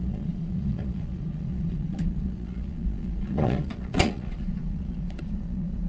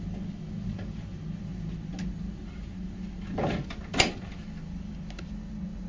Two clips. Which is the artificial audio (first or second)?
first